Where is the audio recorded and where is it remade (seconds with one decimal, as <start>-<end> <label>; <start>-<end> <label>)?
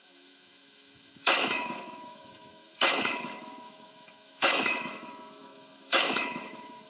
0.0-6.9 remade